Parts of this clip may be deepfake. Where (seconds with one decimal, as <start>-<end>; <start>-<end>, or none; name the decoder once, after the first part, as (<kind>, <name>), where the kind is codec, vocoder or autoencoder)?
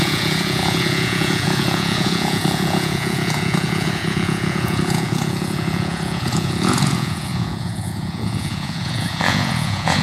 0.0-10.0 (vocoder, Vocos)